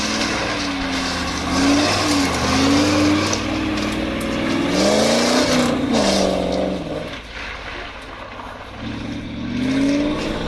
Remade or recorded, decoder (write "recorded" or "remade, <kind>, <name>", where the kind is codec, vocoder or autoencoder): recorded